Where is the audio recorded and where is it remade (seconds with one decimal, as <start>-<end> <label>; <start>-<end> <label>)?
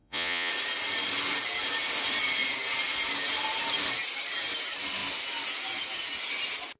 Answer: 0.0-0.5 remade; 0.5-6.8 recorded